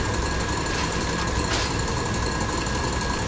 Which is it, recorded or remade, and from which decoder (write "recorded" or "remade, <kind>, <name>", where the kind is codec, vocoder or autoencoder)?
recorded